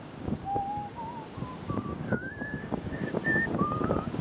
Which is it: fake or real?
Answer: fake